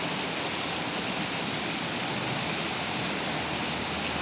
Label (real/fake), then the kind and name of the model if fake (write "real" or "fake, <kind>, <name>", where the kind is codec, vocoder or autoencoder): real